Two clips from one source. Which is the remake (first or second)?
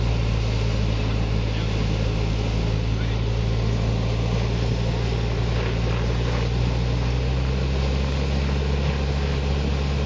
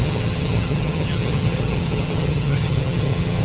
second